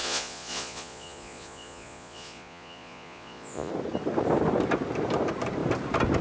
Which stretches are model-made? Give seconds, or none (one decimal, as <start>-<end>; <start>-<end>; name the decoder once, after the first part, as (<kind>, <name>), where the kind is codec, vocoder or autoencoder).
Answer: 0.0-3.7 (vocoder, Vocos)